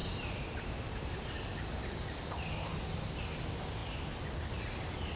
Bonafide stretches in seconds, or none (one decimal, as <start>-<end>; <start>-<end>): 0.0-5.2